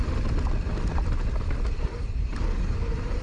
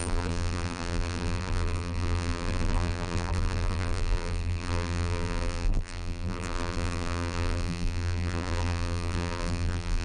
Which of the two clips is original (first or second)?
first